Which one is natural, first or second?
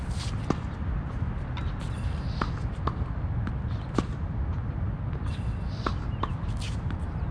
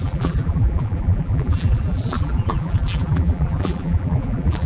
first